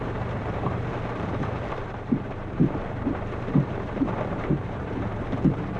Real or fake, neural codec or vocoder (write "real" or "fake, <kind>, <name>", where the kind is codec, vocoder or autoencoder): fake, vocoder, BigVGAN v2